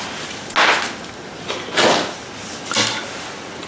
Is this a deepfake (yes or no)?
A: no